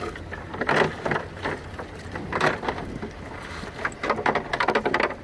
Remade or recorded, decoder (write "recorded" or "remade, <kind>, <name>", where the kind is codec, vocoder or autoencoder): recorded